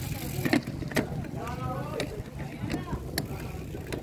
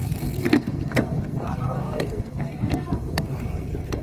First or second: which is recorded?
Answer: first